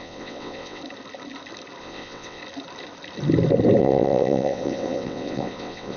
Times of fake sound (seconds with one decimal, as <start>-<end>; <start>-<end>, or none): 0.0-0.8; 1.8-2.4; 3.8-6.0